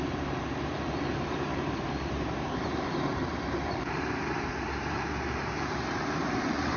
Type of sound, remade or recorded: remade